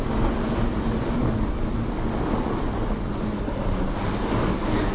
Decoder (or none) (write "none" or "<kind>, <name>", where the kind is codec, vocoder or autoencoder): none